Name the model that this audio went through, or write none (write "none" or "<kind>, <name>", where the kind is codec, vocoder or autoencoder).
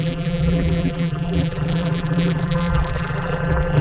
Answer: vocoder, BigVGAN v2